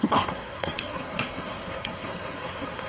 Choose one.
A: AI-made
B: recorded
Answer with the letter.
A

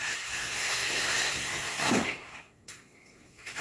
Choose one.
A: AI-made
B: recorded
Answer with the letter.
A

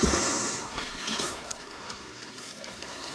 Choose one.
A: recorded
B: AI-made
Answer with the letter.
B